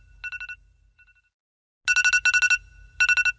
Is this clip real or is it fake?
real